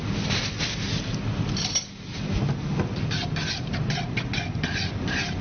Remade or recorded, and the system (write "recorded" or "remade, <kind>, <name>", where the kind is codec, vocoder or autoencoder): recorded